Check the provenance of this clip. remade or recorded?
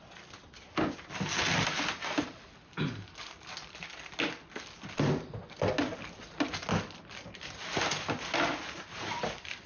recorded